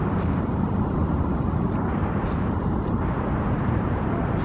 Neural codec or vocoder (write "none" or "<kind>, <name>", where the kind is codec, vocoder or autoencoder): vocoder, BigVGAN v2